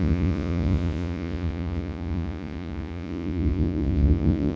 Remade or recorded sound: remade